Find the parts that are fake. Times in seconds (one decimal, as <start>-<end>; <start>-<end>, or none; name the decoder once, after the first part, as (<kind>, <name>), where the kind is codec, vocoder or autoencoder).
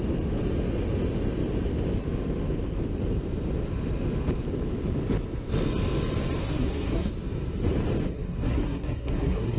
6.4-7.1 (codec, SNAC); 8.1-9.6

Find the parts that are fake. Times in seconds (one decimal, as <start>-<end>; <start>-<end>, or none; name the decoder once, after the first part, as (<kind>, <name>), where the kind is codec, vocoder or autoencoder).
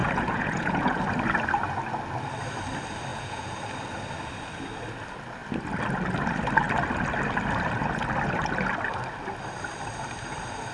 0.0-1.0 (vocoder, Vocos); 3.1-3.6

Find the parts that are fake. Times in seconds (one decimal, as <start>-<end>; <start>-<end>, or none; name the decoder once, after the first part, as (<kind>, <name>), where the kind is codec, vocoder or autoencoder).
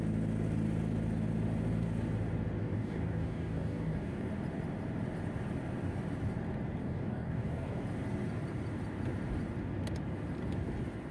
2.6-4.3 (codec, DAC); 6.8-7.8